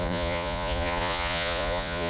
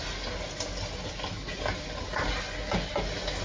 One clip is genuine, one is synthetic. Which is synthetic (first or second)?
first